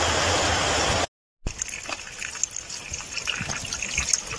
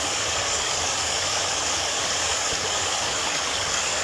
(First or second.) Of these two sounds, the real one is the first